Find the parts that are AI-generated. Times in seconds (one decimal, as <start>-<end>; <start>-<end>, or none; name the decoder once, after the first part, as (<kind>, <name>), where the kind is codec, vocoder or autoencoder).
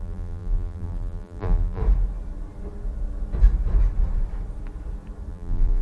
0.0-1.8 (vocoder, BigVGAN v2); 5.3-5.8